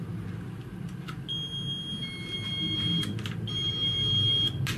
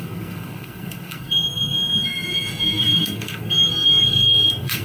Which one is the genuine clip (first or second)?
first